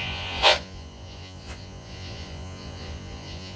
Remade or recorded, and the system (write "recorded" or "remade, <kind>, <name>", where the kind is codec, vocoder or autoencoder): remade, vocoder, Vocos